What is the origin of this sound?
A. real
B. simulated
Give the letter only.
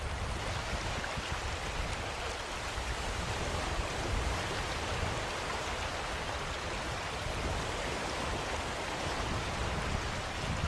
A